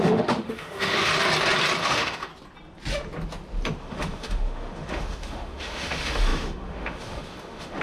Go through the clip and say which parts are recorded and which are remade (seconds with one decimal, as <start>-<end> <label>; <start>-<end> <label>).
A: 0.0-1.1 remade; 1.1-1.8 recorded; 1.8-2.3 remade; 2.3-3.8 recorded; 3.8-7.8 remade